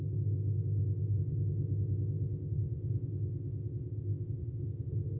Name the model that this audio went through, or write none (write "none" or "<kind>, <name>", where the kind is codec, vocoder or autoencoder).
codec, ZipCodec